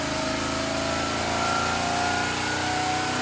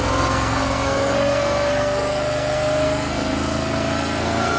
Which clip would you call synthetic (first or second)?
second